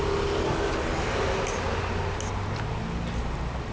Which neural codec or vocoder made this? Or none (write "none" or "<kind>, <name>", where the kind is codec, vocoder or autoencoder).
none